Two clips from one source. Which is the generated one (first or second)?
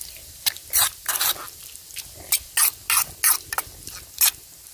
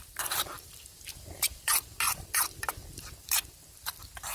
second